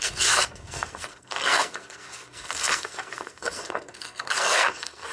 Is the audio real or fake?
fake